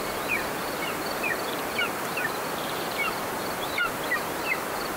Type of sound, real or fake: fake